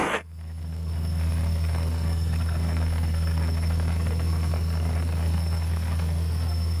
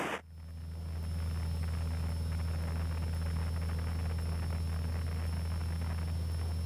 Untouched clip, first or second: second